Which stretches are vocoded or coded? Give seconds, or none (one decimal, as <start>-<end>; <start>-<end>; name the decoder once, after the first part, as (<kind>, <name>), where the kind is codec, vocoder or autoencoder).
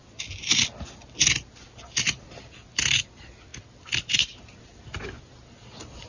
none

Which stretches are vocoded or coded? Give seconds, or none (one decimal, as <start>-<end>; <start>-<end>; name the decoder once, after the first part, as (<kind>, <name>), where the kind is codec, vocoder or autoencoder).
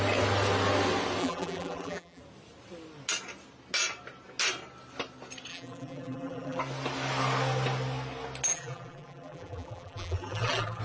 1.2-2.2 (vocoder, BigVGAN v2); 5.5-6.6; 8.5-10.8